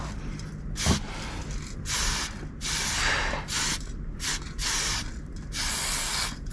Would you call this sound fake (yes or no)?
no